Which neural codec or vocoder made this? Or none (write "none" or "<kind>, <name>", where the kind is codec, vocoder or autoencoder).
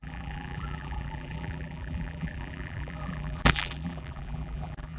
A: vocoder, BigVGAN v2